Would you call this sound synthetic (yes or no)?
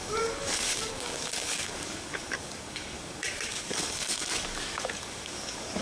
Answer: yes